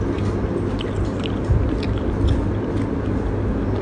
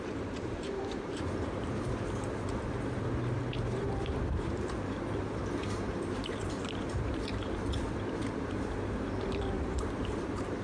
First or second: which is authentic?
first